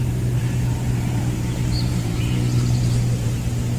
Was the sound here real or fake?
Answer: fake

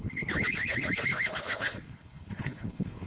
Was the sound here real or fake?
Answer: fake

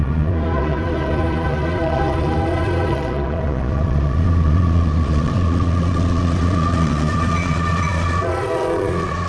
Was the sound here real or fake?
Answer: fake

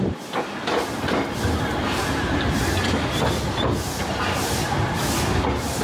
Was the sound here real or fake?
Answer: real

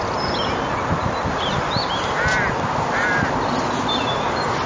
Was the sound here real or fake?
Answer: real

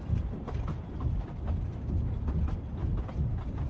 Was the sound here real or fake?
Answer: real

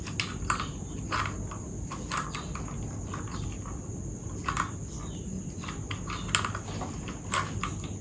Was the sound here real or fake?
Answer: real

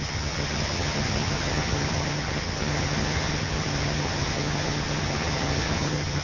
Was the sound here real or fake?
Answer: fake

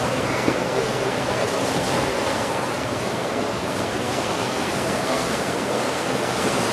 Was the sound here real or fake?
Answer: fake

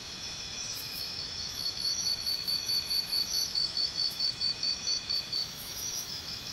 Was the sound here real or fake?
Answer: fake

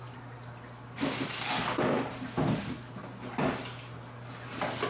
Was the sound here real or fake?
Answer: real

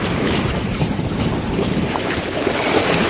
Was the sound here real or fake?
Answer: fake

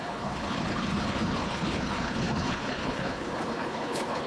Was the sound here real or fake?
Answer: fake